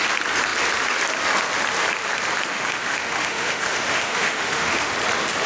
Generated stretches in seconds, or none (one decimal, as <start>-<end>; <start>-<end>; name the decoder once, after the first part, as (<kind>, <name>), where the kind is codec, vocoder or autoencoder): 2.5-4.9 (autoencoder, DAC-VAE)